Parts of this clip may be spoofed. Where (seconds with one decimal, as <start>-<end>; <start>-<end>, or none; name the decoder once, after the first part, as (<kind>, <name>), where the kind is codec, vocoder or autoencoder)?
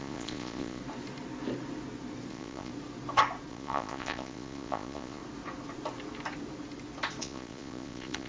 0.0-0.8 (vocoder, Vocos); 2.3-2.7; 3.5-5.2; 7.2-8.3